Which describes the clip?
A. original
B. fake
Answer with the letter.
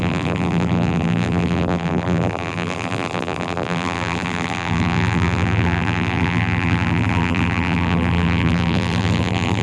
B